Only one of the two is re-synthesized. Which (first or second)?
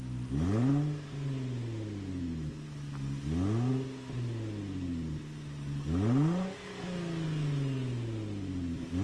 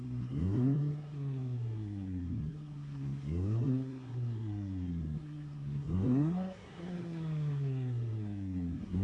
second